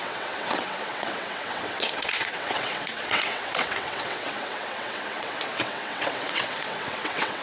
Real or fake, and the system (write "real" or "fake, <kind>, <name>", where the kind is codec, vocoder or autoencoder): fake, vocoder, WaveNeXt